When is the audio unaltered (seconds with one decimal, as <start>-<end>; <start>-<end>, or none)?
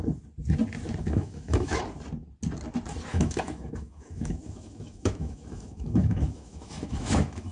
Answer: 0.0-1.0; 1.8-3.1